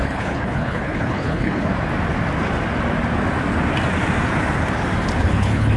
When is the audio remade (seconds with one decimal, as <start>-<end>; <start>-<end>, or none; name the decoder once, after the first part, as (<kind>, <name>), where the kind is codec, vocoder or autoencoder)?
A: 0.0-1.7 (codec, HILCodec); 5.2-5.8